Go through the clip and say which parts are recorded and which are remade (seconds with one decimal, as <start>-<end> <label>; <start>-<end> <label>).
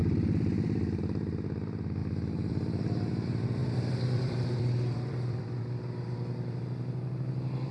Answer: 0.0-1.0 remade; 1.0-2.0 recorded; 2.0-2.7 remade; 2.7-3.6 recorded; 3.6-5.6 remade; 5.6-7.7 recorded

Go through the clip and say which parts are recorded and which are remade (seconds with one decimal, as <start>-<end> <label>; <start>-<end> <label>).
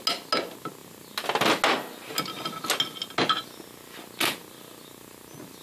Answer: 0.0-5.6 recorded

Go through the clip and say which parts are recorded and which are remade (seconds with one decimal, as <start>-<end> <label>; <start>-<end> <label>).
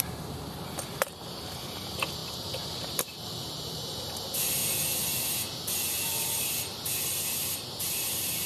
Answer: 0.0-4.6 remade; 4.6-6.4 recorded; 6.4-8.5 remade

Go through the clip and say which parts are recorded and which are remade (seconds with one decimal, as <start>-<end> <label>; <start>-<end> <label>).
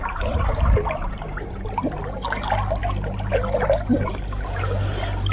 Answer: 0.0-2.0 remade; 2.0-5.3 recorded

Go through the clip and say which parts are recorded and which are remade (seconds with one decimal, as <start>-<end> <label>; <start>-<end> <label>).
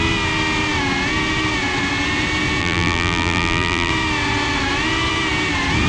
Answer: 0.0-2.6 recorded; 2.6-3.9 remade; 3.9-5.9 recorded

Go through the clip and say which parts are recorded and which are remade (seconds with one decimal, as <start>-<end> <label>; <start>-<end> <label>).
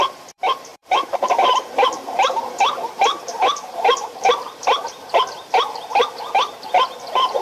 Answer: 0.0-0.7 recorded; 0.7-2.4 remade; 2.4-3.1 recorded; 3.1-4.6 remade; 4.6-7.4 recorded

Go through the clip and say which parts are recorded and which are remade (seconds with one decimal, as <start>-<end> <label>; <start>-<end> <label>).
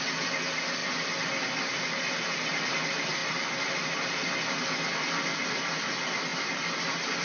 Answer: 0.0-7.2 recorded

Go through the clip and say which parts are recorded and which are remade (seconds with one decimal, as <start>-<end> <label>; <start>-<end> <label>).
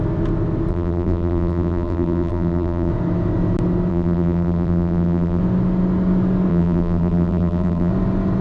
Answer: 0.0-0.7 recorded; 0.7-2.9 remade; 2.9-3.9 recorded; 3.9-5.4 remade; 5.4-6.5 recorded; 6.5-7.9 remade; 7.9-8.4 recorded